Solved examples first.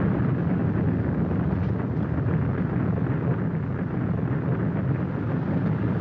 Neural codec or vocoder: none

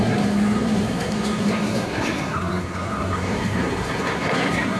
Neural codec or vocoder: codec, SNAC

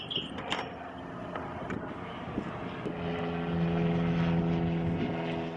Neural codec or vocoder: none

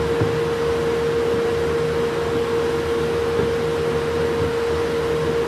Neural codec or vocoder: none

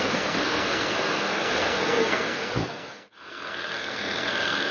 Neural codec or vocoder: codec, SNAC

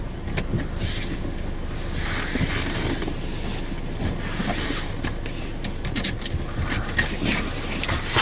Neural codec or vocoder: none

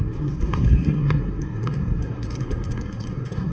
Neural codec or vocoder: codec, SNAC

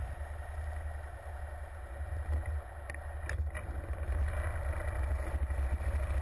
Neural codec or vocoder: none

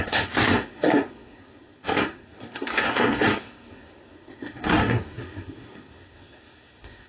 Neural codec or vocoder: codec, SNAC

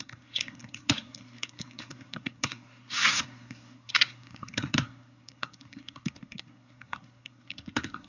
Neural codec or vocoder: codec, SNAC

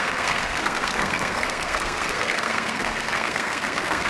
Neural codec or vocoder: codec, SNAC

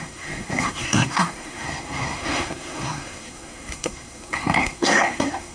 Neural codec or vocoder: codec, SNAC